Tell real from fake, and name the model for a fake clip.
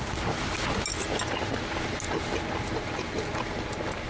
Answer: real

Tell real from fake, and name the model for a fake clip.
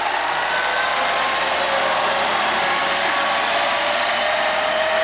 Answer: real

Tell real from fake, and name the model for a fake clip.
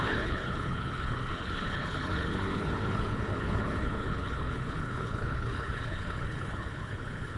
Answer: fake, codec, HILCodec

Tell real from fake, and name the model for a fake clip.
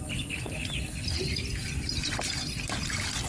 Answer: real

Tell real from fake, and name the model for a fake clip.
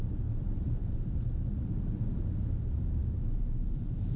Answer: fake, vocoder, BigVGAN v2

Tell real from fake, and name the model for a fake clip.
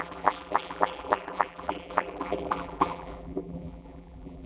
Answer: fake, vocoder, BigVGAN v2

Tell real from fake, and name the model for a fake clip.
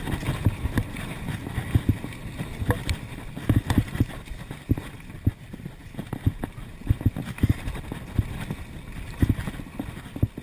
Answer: real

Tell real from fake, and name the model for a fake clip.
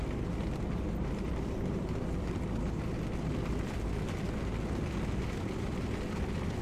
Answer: real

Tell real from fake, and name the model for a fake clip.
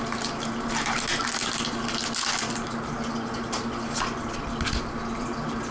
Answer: real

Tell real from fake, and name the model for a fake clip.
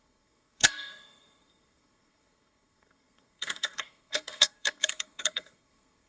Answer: fake, codec, SNAC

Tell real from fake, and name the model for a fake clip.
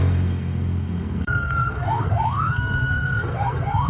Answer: fake, codec, SNAC